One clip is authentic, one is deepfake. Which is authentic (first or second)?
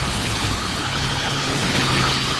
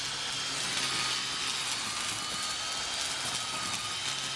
second